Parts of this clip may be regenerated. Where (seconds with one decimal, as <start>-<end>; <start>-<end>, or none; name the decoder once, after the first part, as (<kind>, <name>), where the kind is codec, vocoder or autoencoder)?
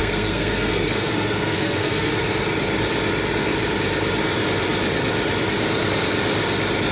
0.0-2.1 (codec, SNAC)